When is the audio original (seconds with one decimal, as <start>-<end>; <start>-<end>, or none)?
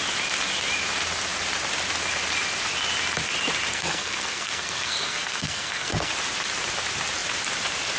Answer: 0.0-3.7; 6.1-8.0